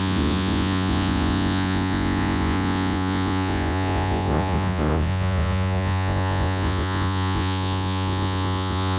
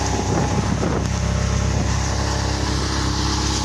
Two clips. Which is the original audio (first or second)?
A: second